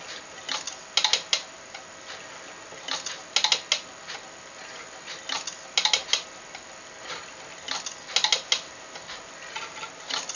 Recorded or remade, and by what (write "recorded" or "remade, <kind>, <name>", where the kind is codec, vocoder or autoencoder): recorded